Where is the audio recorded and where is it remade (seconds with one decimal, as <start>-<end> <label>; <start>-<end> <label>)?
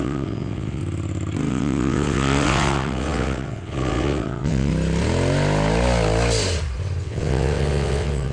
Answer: 0.0-0.8 remade; 0.8-1.5 recorded; 1.5-4.7 remade; 4.7-7.0 recorded; 7.0-8.3 remade